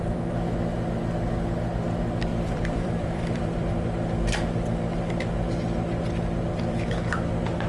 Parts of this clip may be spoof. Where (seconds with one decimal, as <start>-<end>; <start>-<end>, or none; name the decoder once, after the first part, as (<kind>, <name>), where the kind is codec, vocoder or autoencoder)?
2.3-3.7 (vocoder, BigVGAN v2)